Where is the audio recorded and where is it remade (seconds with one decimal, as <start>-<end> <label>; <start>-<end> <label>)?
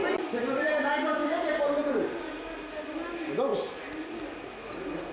0.0-5.1 recorded